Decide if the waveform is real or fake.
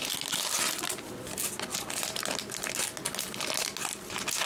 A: real